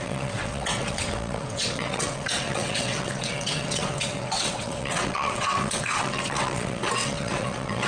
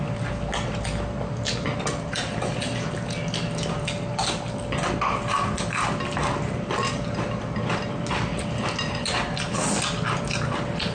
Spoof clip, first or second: first